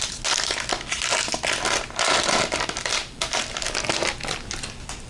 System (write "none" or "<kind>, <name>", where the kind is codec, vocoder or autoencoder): none